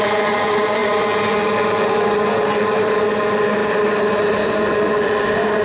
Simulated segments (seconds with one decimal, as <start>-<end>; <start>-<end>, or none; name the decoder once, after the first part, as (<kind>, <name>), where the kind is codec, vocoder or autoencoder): none